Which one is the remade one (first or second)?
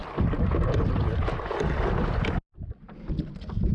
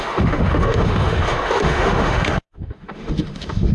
second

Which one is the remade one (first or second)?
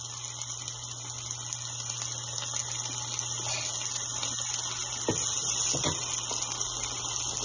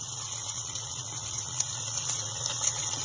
second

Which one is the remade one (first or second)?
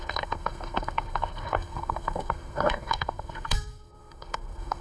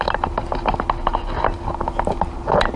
first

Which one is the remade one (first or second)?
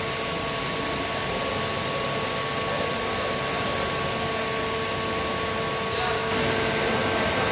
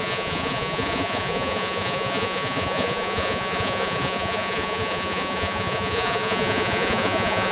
second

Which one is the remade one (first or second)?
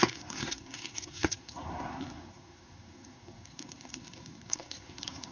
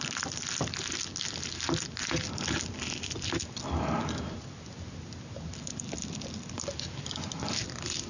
first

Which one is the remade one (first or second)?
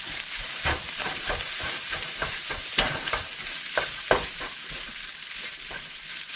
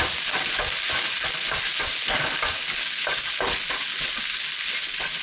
first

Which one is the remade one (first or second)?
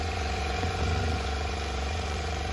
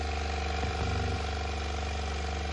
first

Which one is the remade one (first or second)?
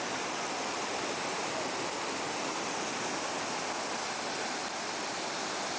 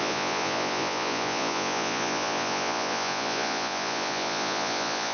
second